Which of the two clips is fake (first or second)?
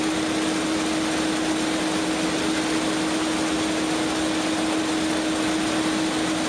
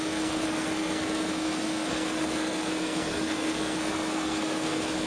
second